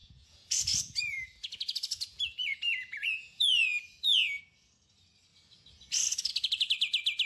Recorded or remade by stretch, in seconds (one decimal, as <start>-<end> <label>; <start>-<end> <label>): 0.0-4.4 remade; 4.4-7.3 recorded